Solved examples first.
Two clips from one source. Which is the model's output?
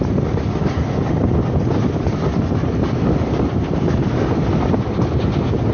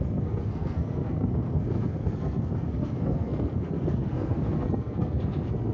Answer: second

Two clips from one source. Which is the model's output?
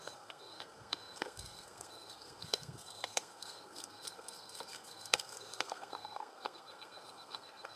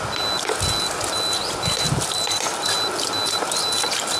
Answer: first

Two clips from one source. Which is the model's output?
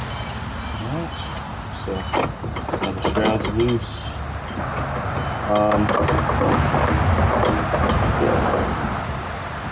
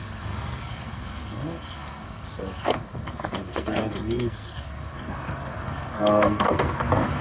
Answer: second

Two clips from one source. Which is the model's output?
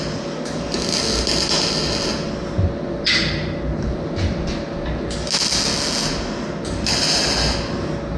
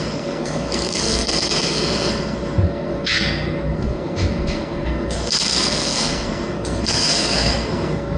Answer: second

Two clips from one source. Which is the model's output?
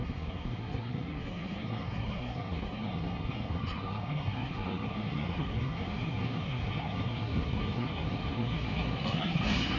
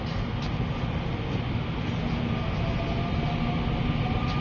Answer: first